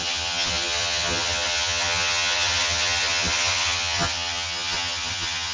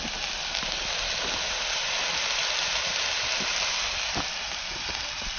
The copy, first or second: first